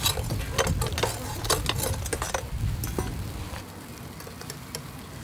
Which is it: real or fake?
real